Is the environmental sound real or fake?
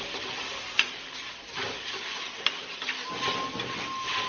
real